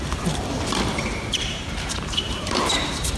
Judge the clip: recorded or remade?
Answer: remade